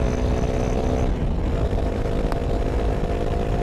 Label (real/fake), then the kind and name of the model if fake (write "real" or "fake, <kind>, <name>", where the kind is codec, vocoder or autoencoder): real